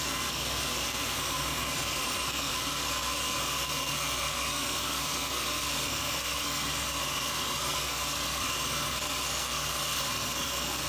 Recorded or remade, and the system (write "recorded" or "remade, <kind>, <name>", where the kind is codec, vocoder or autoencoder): remade, codec, SNAC